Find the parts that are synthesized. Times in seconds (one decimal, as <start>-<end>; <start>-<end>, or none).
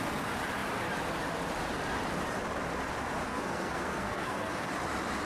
3.3-4.7